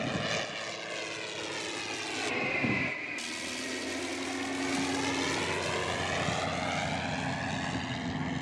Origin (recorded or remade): recorded